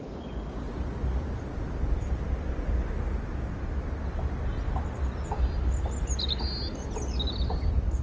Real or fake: real